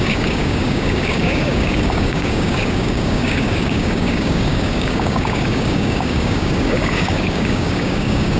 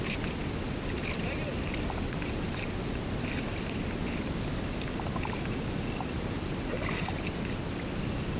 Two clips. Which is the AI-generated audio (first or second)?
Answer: first